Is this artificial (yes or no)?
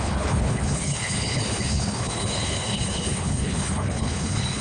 yes